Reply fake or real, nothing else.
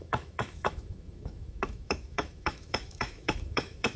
fake